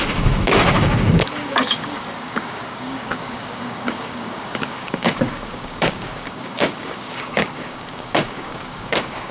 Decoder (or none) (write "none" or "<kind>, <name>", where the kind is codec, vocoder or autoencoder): codec, DAC